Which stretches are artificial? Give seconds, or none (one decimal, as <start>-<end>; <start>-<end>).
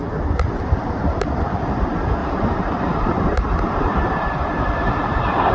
0.6-5.5